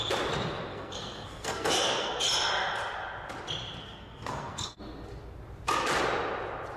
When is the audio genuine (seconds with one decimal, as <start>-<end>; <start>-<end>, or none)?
0.0-0.7; 2.2-3.8; 4.8-6.8